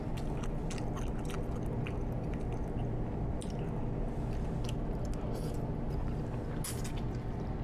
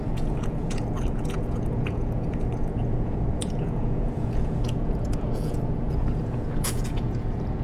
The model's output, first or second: second